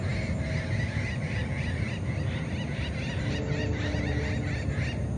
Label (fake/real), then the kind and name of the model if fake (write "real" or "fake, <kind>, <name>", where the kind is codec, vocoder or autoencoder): real